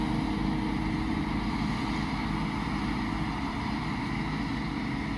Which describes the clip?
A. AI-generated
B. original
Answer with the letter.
B